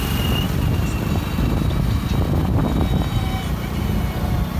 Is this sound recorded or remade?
recorded